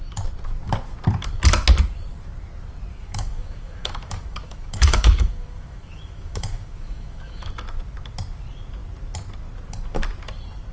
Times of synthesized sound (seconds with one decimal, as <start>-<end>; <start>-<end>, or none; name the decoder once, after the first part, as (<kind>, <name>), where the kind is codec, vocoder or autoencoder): 2.9-7.5 (autoencoder, DAC-VAE)